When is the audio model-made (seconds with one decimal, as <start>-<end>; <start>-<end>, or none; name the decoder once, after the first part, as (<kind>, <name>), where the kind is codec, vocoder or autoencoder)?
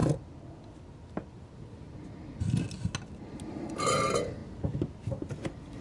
3.5-4.4 (vocoder, BigVGAN v2); 5.0-5.8